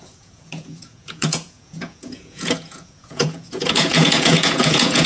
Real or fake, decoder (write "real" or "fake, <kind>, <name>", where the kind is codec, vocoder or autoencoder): fake, vocoder, Vocos